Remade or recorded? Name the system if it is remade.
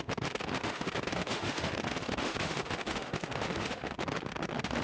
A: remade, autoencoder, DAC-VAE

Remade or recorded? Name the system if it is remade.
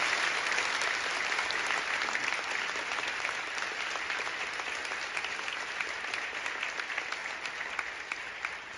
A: recorded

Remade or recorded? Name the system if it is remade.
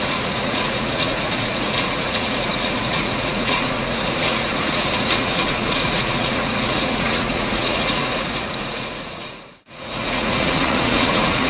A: remade, vocoder, Vocos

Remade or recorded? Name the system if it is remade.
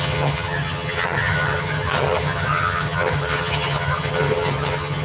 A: remade, vocoder, HiFi-GAN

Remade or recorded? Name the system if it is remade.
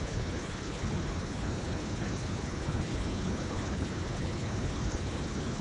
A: remade, codec, HILCodec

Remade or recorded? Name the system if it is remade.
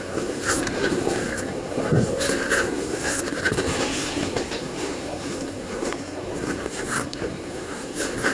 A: remade, codec, SNAC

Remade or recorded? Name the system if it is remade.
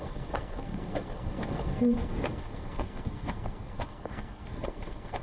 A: remade, codec, SNAC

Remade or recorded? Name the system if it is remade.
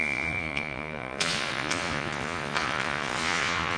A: remade, vocoder, Vocos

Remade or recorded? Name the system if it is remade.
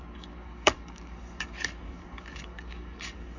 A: remade, codec, DAC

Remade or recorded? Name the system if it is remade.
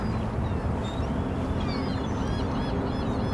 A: recorded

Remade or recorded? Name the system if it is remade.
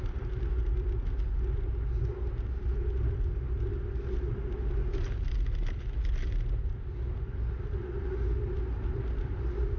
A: recorded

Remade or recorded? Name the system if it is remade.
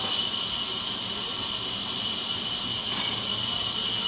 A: recorded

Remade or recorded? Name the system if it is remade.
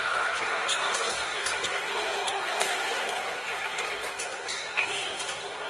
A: remade, codec, SNAC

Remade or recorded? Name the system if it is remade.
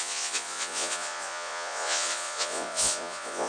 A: remade, vocoder, Vocos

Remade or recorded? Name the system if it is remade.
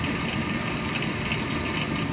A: recorded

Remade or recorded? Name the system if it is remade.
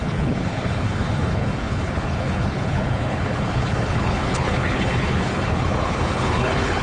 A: remade, codec, HILCodec